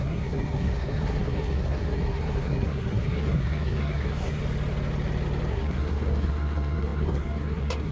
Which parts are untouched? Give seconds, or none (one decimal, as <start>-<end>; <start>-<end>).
4.4-5.5